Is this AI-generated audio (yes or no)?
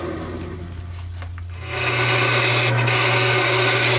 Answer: no